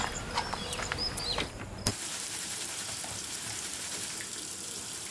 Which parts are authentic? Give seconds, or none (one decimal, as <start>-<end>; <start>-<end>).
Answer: 1.0-1.9